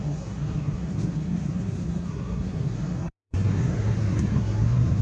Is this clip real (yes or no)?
no